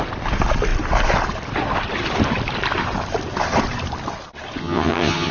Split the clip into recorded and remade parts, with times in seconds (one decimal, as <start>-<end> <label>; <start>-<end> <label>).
0.0-4.6 recorded; 4.6-5.3 remade